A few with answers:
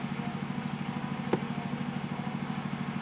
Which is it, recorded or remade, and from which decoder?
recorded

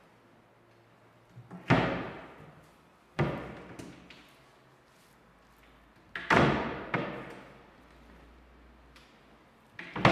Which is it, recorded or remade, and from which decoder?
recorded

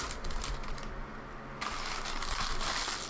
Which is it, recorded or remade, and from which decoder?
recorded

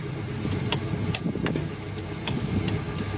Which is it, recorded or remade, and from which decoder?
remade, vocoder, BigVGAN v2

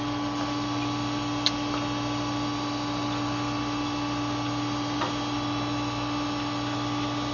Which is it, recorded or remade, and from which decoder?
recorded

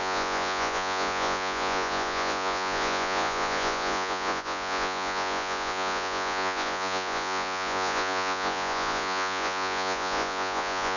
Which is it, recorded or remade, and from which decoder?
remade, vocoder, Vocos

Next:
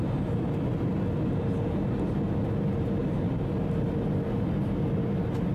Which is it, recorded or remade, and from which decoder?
recorded